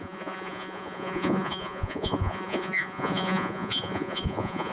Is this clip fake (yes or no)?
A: yes